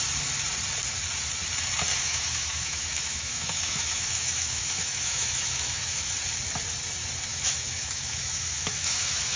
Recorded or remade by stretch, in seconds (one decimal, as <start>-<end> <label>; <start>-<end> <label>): 0.0-1.9 recorded; 1.9-6.1 remade; 6.1-7.3 recorded; 7.3-9.4 remade